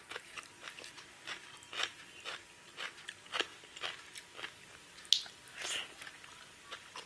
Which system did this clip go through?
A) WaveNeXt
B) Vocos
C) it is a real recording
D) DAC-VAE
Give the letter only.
C